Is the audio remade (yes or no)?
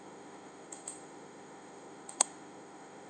yes